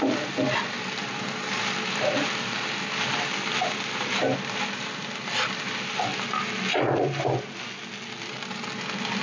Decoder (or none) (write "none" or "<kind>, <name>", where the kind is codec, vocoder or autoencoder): none